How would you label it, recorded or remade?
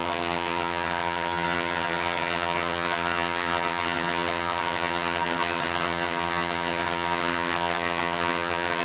remade